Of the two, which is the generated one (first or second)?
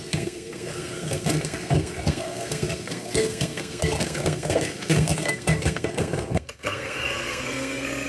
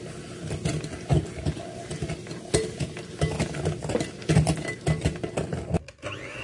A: first